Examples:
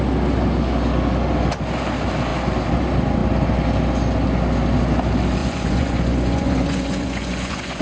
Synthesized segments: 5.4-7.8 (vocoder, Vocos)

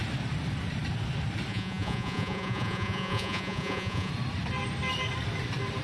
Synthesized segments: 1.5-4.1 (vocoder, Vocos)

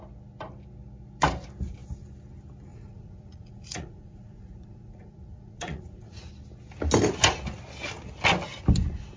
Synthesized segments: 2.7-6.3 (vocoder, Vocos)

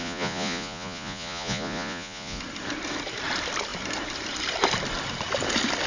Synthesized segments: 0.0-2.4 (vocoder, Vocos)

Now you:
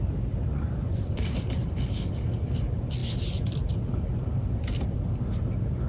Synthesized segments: 0.5-1.0 (vocoder, Vocos)